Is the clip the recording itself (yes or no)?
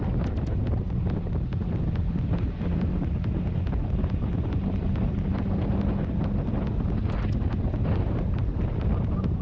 yes